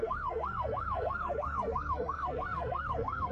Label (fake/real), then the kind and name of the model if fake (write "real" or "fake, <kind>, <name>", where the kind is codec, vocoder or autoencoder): fake, codec, SNAC